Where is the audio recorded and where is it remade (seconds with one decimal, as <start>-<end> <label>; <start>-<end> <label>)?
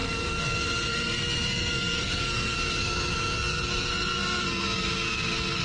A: 0.0-5.6 remade